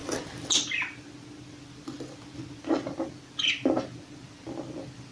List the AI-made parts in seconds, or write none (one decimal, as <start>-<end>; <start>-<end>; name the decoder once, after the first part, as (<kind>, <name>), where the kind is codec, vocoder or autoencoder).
none